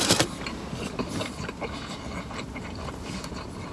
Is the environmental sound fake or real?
fake